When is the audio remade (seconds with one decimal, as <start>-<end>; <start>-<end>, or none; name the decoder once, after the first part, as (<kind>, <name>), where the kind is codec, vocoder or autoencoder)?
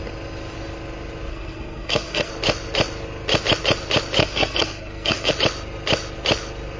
1.3-2.3 (codec, SNAC); 4.2-5.3